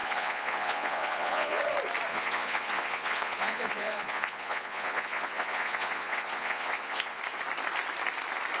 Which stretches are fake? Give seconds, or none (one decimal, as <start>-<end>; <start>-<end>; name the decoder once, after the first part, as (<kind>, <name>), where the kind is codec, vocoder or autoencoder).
0.0-1.6 (vocoder, Vocos); 2.1-7.2